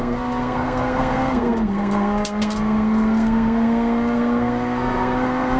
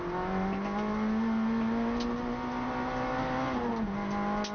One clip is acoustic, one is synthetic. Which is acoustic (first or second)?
second